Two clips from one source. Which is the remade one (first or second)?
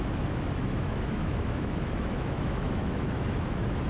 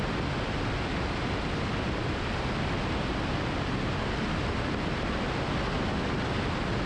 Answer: first